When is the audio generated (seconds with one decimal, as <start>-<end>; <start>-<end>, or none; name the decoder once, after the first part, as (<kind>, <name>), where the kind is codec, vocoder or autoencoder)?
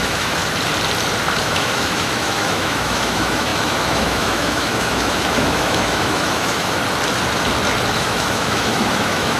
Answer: 0.0-0.4 (autoencoder, DAC-VAE); 1.4-6.8; 7.9-9.4